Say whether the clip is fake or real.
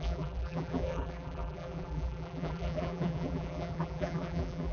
fake